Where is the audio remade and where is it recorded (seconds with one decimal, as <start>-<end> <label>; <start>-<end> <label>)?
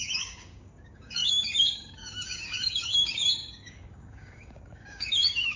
0.0-5.6 remade